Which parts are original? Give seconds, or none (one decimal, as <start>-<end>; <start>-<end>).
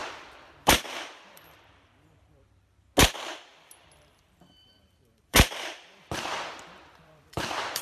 2.5-3.5